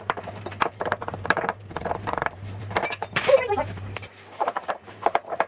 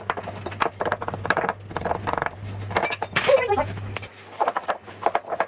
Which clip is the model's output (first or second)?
first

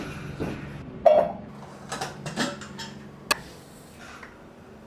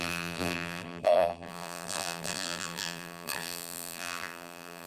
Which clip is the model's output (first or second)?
second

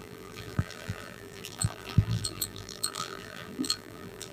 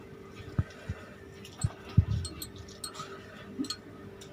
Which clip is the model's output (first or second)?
first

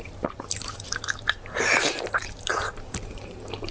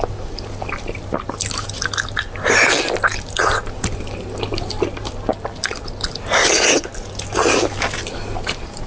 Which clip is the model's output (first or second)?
first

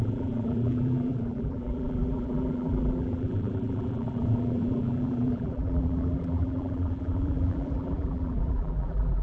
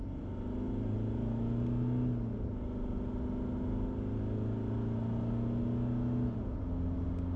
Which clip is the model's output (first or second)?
first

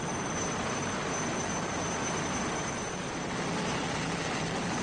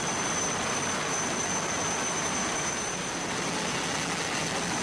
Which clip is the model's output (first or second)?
first